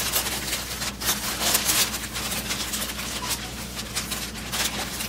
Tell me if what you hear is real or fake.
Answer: real